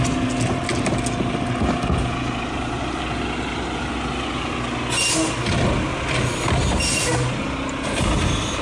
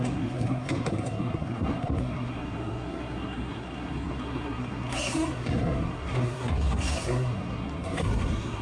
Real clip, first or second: first